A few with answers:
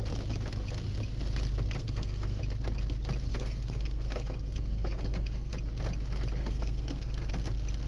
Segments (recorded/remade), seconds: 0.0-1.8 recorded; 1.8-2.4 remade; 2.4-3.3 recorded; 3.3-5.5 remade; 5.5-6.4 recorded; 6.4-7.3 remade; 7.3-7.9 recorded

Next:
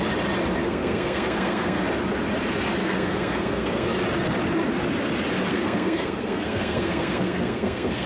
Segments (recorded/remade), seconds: 0.0-0.6 recorded; 0.6-1.8 remade; 1.8-2.8 recorded; 2.8-3.9 remade; 3.9-5.5 recorded; 5.5-8.1 remade

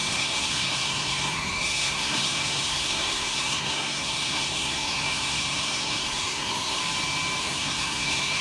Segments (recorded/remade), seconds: 0.0-6.8 remade; 6.8-7.4 recorded; 7.4-8.4 remade

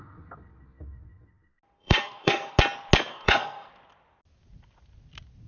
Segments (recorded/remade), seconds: 0.0-1.8 recorded; 1.8-2.6 remade; 2.6-3.1 recorded; 3.1-3.7 remade; 3.7-5.5 recorded

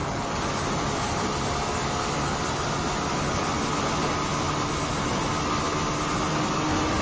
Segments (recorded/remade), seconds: 0.0-7.0 recorded

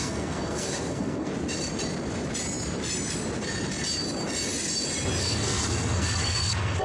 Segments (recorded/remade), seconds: 0.0-1.3 remade; 1.3-5.2 recorded; 5.2-6.8 remade